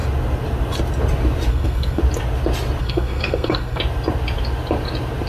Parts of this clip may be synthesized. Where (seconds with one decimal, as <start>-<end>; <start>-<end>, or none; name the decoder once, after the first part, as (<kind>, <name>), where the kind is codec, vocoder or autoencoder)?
1.5-2.0 (codec, SNAC); 2.8-3.8